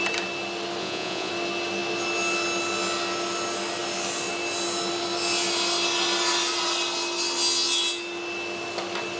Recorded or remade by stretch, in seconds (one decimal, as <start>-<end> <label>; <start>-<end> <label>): 0.0-0.8 recorded; 0.8-1.3 remade; 1.3-9.2 recorded